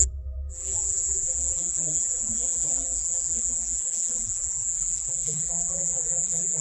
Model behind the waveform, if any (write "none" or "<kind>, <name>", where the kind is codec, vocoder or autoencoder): vocoder, BigVGAN v2